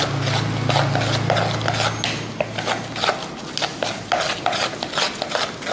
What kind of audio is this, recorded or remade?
recorded